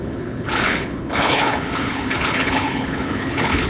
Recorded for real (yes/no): no